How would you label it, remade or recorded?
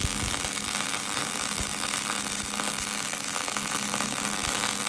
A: recorded